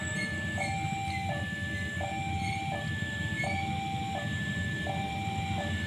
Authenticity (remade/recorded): recorded